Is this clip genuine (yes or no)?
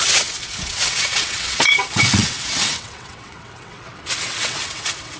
no